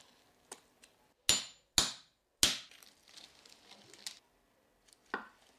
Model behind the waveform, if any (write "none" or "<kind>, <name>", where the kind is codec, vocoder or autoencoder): none